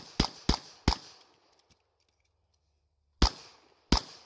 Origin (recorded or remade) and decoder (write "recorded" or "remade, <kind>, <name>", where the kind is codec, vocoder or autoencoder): recorded